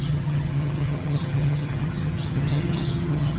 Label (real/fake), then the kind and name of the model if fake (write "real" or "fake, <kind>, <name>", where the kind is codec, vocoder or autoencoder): fake, vocoder, HiFi-GAN